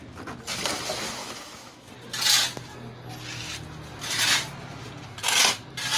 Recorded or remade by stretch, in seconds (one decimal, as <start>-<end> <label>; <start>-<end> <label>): 0.0-1.2 recorded; 1.2-1.9 remade; 1.9-6.0 recorded